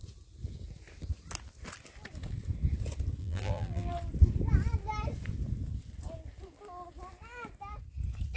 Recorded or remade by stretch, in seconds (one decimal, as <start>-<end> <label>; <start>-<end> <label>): 0.0-3.2 recorded; 3.2-3.9 remade; 3.9-8.4 recorded